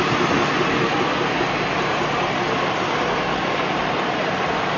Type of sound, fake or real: real